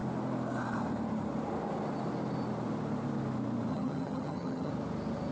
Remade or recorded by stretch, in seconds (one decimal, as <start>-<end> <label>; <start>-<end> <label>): 0.0-3.7 recorded; 3.7-4.7 remade; 4.7-5.3 recorded